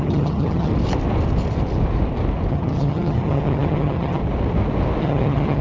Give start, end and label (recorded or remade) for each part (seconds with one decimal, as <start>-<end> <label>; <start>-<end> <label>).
0.0-0.7 remade; 0.7-2.5 recorded; 2.5-4.2 remade; 4.2-5.0 recorded; 5.0-5.6 remade